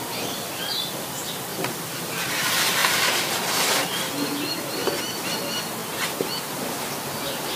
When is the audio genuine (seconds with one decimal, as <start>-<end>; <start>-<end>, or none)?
0.0-1.5; 2.2-2.8; 3.3-5.8; 6.9-7.6